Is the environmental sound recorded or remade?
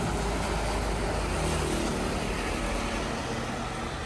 recorded